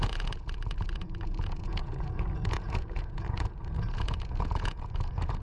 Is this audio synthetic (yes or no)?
yes